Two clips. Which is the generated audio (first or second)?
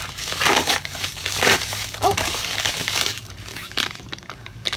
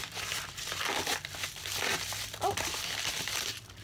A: first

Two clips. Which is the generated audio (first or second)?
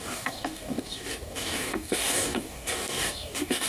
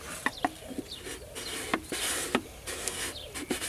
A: first